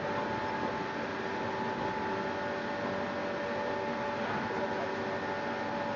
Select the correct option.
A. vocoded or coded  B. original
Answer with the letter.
B